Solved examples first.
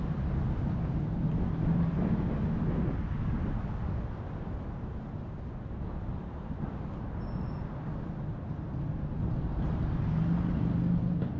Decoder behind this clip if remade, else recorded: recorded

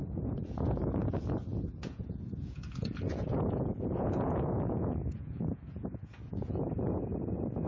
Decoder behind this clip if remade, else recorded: remade, vocoder, Vocos